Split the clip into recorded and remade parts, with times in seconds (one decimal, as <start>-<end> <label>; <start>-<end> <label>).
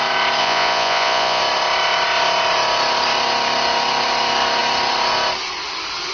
0.0-0.4 recorded; 0.4-1.4 remade; 1.4-6.1 recorded